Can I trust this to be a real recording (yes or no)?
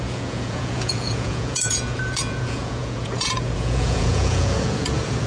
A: no